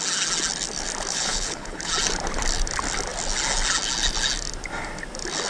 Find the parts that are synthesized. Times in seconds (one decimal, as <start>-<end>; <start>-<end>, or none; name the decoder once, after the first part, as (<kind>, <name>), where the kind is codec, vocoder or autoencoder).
1.1-1.9 (codec, HILCodec)